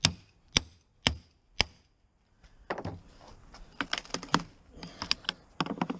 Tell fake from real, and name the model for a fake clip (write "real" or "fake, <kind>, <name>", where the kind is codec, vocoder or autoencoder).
real